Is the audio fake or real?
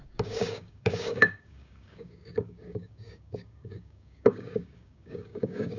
fake